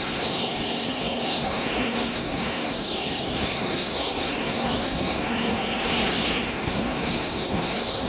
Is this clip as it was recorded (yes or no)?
no